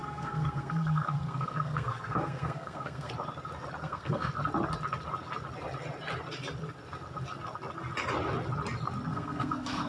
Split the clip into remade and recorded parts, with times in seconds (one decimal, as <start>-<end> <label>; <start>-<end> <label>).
0.0-3.1 remade; 3.1-3.8 recorded; 3.8-4.3 remade; 4.3-9.1 recorded; 9.1-9.9 remade